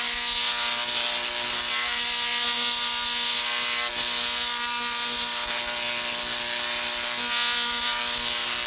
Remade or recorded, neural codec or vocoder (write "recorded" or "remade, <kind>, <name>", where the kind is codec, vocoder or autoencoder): recorded